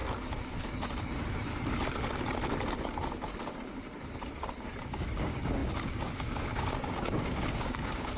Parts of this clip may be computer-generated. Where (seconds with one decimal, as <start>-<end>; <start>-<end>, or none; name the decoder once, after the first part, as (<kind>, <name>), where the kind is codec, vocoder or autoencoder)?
4.9-8.2 (codec, DAC)

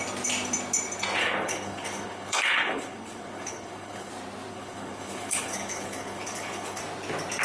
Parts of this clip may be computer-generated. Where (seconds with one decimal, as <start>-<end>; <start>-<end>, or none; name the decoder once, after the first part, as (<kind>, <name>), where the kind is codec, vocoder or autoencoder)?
1.2-4.1 (codec, HILCodec); 4.5-6.8

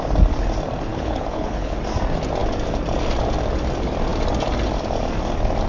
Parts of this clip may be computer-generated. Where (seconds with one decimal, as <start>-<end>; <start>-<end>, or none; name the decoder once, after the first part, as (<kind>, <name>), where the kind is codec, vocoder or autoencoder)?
0.9-1.8 (codec, HILCodec)

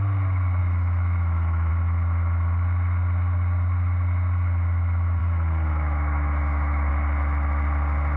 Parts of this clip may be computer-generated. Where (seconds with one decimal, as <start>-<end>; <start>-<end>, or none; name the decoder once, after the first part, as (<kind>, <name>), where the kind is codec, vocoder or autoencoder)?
0.6-1.7 (autoencoder, DAC-VAE); 5.2-6.9

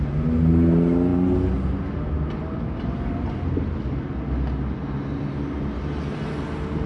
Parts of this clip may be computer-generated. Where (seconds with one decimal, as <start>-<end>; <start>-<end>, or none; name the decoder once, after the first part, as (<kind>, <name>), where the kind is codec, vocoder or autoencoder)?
none

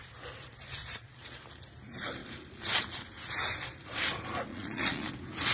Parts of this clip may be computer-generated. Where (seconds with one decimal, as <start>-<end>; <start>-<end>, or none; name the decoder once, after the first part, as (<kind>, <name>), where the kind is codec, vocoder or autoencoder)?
0.8-1.4 (vocoder, Vocos); 4.5-5.1